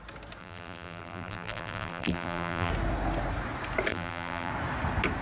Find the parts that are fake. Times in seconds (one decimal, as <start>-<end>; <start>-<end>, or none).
0.4-2.7; 3.9-4.5